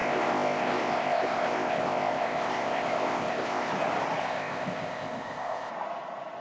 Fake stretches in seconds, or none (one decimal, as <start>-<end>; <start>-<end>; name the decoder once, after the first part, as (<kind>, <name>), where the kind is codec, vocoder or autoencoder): 0.0-3.7 (codec, ZipCodec); 4.2-5.7